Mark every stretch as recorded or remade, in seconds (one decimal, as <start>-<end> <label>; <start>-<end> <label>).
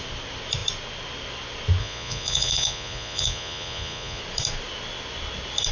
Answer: 0.0-1.8 recorded; 1.8-4.2 remade; 4.2-5.7 recorded